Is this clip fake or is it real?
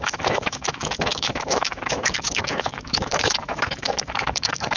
fake